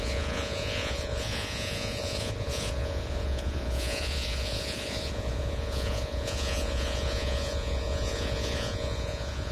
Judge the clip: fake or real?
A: fake